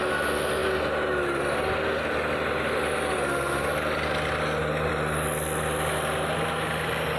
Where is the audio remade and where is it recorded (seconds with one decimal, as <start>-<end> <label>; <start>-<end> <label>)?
0.0-7.2 recorded